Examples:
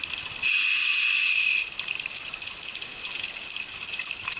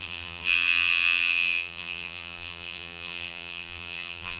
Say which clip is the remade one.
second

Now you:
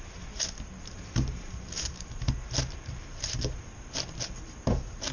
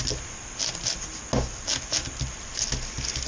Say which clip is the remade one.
first